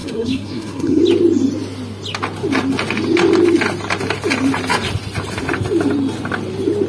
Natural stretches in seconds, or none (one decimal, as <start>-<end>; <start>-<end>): 1.0-6.9